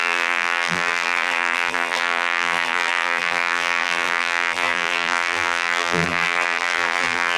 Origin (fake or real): fake